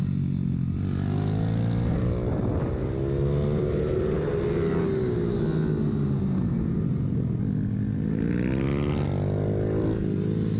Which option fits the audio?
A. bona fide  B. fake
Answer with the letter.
A